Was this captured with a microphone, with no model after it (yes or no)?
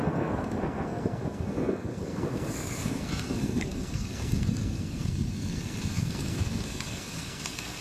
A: no